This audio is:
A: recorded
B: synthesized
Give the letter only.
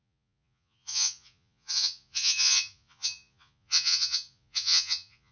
B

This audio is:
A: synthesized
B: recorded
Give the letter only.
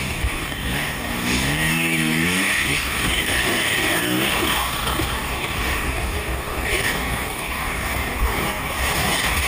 A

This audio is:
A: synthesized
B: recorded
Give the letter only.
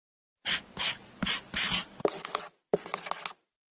B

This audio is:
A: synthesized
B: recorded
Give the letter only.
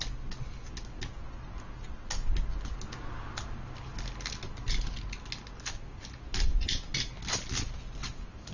B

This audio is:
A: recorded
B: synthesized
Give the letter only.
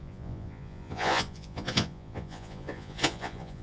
B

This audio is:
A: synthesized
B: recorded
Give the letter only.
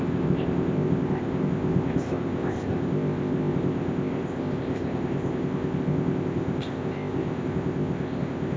A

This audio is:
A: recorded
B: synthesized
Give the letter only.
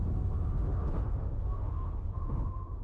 B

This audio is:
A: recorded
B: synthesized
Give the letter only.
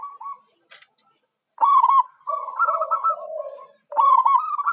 A